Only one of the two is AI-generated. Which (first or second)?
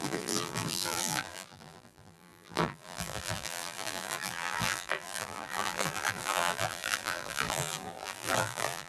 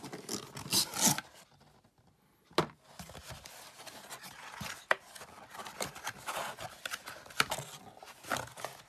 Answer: first